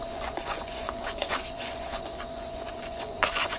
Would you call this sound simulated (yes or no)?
yes